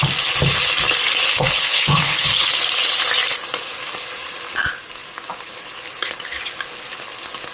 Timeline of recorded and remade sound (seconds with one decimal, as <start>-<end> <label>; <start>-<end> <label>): 0.0-1.3 recorded; 1.3-2.5 remade; 2.5-7.5 recorded

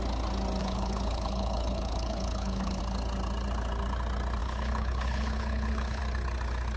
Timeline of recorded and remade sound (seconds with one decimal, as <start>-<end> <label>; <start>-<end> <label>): 0.0-0.6 recorded; 0.6-2.8 remade; 2.8-4.4 recorded; 4.4-6.0 remade; 6.0-6.8 recorded

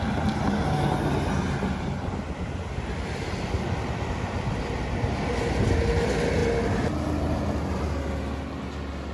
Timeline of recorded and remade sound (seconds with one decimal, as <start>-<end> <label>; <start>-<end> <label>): 0.0-9.1 recorded

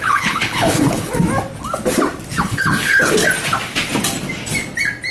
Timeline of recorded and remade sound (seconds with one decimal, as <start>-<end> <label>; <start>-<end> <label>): 0.0-1.1 remade; 1.1-2.4 recorded; 2.4-3.2 remade; 3.2-5.1 recorded

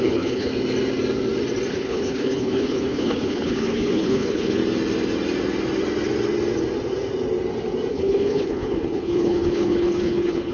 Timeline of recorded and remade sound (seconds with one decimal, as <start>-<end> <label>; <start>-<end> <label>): 0.0-0.5 remade; 0.5-1.7 recorded; 1.7-4.6 remade; 4.6-7.9 recorded; 7.9-10.5 remade

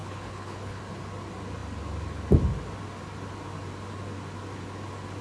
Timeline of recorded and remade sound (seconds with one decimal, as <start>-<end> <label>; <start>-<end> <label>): 0.0-0.8 remade; 0.8-5.2 recorded